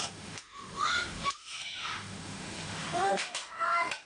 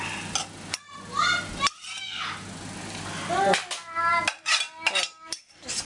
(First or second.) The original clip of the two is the second